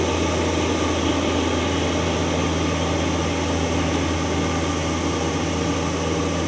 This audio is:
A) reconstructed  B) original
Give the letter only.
B